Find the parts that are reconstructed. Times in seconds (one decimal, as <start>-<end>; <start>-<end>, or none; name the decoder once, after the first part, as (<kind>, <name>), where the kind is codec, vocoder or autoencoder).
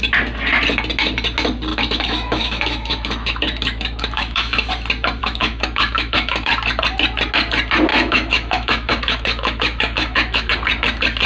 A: 1.7-4.7 (autoencoder, DAC-VAE); 5.2-6.5; 7.9-10.5